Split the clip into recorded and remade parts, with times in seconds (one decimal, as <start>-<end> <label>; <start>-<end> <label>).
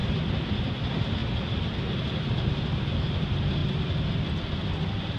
0.0-5.2 recorded